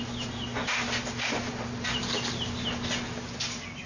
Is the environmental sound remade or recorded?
recorded